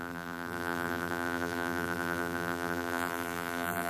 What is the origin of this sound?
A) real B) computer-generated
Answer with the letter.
B